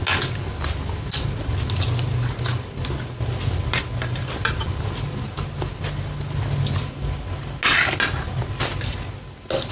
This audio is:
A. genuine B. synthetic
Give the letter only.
A